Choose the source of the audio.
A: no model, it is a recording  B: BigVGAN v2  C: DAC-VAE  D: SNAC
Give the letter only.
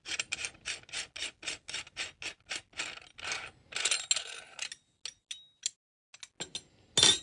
A